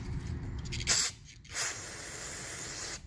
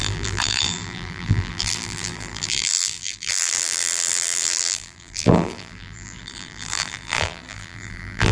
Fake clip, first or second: second